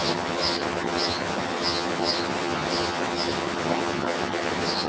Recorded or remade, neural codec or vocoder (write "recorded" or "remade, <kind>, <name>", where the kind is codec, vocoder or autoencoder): remade, vocoder, HiFi-GAN